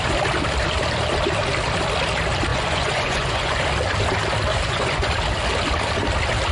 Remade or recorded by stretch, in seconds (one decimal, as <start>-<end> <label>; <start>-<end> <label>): 0.0-2.5 recorded; 2.5-3.6 remade; 3.6-4.5 recorded; 4.5-5.1 remade; 5.1-6.5 recorded